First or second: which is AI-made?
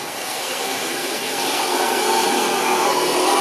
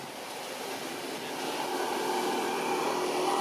first